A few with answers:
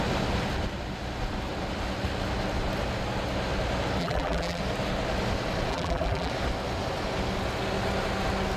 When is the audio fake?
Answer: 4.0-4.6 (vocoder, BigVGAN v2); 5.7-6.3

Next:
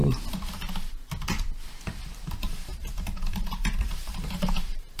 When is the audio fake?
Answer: 2.3-5.0 (vocoder, BigVGAN v2)

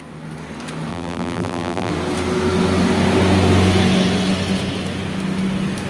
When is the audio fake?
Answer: 0.9-1.9 (vocoder, BigVGAN v2)

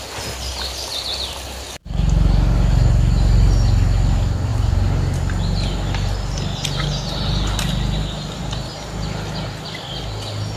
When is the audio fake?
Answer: 4.5-5.2 (vocoder, BigVGAN v2)